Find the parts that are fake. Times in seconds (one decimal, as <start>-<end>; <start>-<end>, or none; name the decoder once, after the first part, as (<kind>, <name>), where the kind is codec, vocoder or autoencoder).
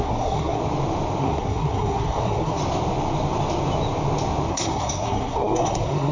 0.0-0.6 (codec, SNAC); 1.2-2.6; 4.5-6.1